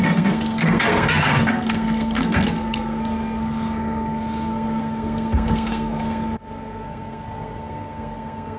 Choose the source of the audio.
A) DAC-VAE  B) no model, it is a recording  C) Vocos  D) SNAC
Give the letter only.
D